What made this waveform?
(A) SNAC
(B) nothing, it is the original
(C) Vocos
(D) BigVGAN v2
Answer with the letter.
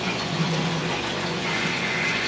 C